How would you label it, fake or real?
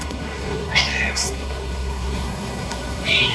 fake